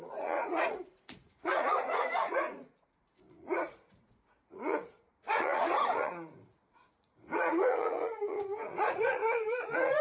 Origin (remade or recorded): remade